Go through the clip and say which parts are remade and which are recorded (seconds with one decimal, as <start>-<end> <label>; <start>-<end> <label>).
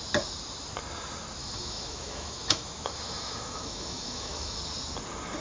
0.0-1.4 recorded; 1.4-4.6 remade; 4.6-5.4 recorded